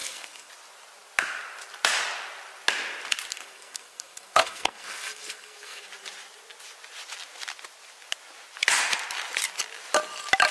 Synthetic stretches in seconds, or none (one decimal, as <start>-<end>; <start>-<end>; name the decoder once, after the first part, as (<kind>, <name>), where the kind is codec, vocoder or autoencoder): 0.0-0.5 (codec, SNAC); 3.3-5.9